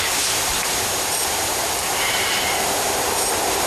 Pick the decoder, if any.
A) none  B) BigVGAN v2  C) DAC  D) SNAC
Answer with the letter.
B